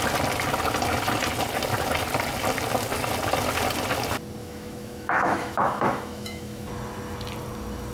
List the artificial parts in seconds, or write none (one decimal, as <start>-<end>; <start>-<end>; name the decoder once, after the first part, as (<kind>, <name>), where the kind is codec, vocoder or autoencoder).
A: 4.4-6.7 (autoencoder, DAC-VAE)